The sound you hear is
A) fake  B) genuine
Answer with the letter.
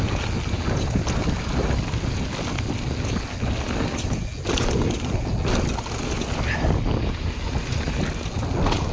B